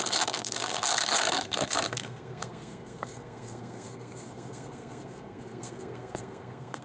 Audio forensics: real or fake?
fake